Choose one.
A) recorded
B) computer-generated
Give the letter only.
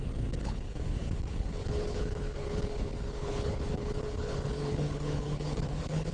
B